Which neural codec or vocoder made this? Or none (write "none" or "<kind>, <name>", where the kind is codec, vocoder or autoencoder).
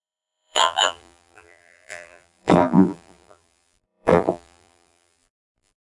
vocoder, BigVGAN v2